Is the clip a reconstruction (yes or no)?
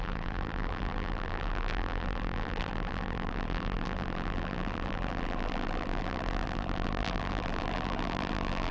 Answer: yes